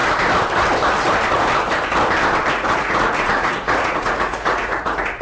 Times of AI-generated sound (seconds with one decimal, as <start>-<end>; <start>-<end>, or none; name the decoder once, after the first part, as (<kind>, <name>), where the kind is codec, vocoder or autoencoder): 2.5-5.2 (vocoder, Vocos)

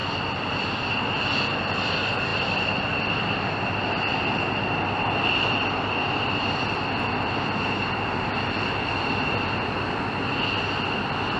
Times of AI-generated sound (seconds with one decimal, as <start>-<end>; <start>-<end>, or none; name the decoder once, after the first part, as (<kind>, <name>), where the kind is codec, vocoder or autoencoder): none

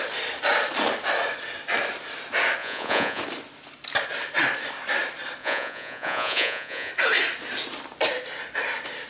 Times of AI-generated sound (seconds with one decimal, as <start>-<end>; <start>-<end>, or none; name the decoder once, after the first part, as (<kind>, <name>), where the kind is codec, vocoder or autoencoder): 2.6-3.2 (vocoder, Vocos); 5.4-6.9